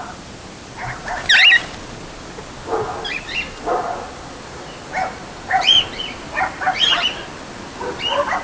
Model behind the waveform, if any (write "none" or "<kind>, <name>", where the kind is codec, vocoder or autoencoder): none